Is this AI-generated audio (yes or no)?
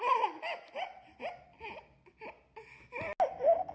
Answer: no